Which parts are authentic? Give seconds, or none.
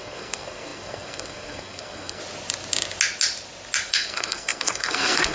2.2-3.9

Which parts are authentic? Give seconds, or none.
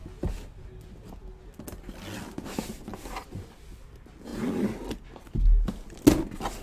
0.0-6.6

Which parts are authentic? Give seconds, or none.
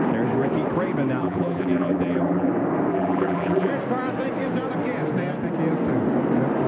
0.0-1.2; 2.5-2.9; 3.7-6.7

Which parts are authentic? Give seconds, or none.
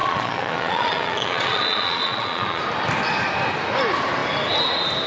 2.6-5.1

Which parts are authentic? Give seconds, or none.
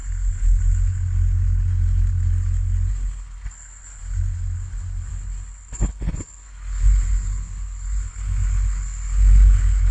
none